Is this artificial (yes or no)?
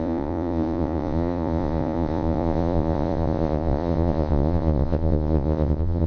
yes